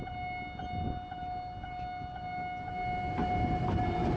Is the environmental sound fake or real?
real